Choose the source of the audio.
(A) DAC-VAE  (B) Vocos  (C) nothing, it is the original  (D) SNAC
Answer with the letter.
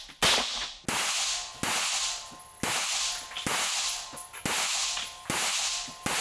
C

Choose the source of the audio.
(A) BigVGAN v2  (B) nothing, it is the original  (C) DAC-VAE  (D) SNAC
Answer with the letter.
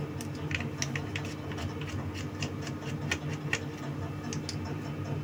B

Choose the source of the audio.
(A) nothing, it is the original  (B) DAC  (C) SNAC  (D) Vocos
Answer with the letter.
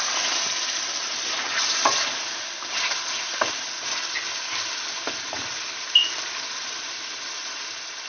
A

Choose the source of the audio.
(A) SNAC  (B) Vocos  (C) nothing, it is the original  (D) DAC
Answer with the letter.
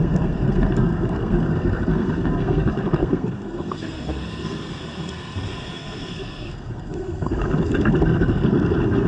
A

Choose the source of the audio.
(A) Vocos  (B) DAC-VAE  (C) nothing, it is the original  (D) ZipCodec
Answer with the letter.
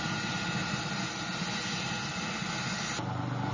C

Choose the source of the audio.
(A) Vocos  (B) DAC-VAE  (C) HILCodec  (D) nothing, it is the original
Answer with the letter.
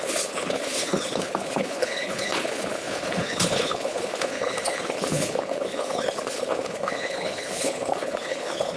C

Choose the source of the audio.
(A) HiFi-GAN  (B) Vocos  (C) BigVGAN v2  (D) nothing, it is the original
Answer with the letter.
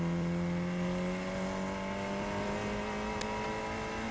D